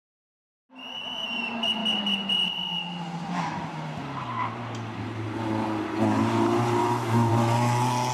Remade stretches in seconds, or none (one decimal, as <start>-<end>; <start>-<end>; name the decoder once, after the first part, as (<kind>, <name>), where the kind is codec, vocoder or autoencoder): 6.8-7.3 (autoencoder, DAC-VAE)